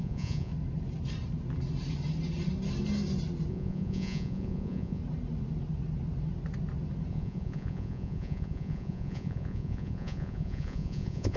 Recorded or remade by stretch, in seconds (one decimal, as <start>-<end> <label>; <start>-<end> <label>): 0.0-0.5 remade; 0.5-3.5 recorded; 3.5-5.0 remade; 5.0-7.1 recorded; 7.1-11.4 remade